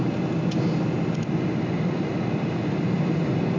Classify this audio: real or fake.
real